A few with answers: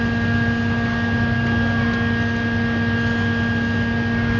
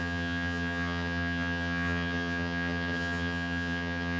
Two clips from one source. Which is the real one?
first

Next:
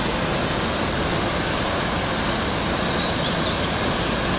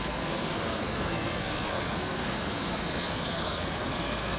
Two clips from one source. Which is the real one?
first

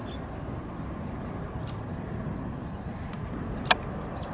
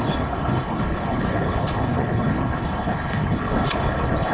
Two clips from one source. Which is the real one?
first